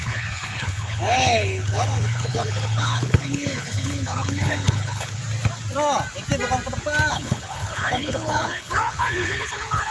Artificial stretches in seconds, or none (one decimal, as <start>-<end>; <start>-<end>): 0.0-5.2; 7.1-9.9